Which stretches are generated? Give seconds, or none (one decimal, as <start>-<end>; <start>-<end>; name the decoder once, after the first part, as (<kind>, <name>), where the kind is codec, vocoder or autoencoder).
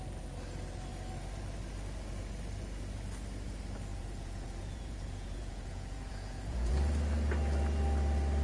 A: 3.9-6.7 (vocoder, Vocos)